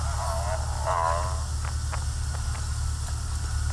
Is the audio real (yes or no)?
yes